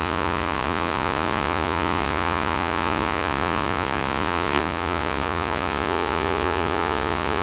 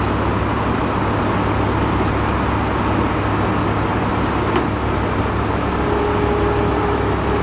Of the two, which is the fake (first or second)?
first